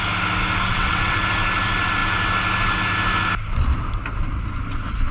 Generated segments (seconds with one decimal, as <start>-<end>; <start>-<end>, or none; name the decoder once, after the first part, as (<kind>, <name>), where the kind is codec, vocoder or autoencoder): 0.7-1.2 (vocoder, WaveNeXt)